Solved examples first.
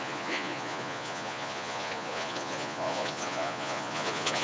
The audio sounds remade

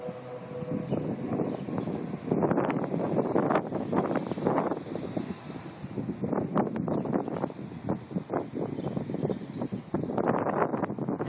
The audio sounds recorded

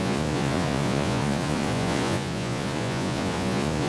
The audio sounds remade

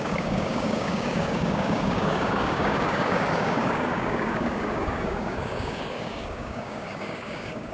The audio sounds remade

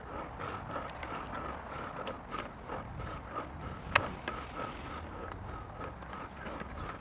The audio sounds recorded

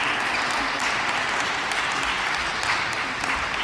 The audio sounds recorded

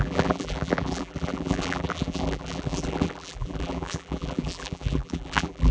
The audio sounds remade